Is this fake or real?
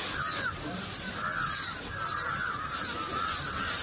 real